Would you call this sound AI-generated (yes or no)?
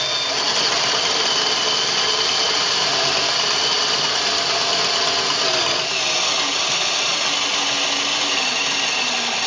no